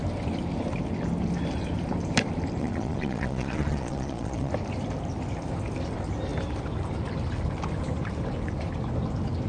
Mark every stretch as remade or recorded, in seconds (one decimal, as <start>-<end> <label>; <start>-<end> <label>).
0.0-2.6 recorded; 2.6-4.5 remade; 4.5-9.5 recorded